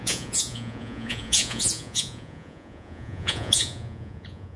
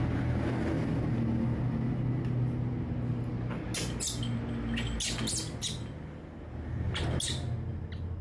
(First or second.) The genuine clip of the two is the second